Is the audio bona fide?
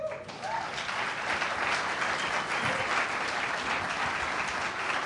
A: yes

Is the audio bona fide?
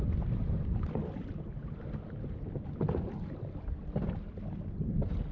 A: yes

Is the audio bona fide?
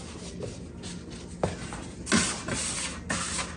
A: yes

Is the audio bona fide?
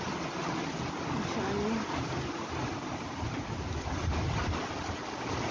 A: yes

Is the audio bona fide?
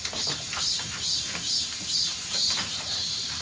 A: no